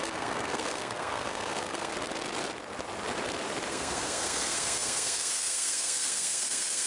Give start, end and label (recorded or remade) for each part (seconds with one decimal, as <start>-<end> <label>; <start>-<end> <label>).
0.0-1.9 remade; 1.9-3.7 recorded; 3.7-6.9 remade